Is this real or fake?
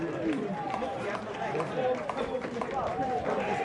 fake